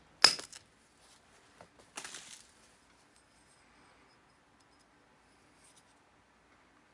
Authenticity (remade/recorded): recorded